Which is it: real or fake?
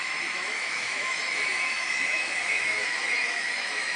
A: fake